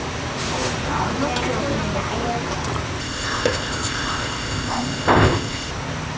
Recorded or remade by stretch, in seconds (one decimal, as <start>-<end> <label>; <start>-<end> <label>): 0.0-3.0 recorded; 3.0-5.7 remade; 5.7-6.2 recorded